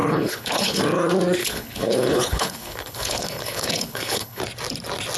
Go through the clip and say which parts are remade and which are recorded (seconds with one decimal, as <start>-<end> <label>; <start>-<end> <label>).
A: 0.0-0.8 remade; 0.8-1.4 recorded; 1.4-4.4 remade; 4.4-5.2 recorded